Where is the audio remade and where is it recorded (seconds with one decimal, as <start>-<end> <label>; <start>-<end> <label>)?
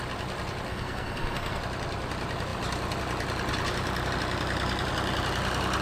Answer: 0.0-0.7 recorded; 0.7-1.6 remade; 1.6-5.8 recorded